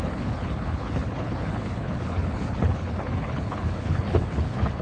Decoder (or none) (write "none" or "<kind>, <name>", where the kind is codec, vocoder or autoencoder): codec, HILCodec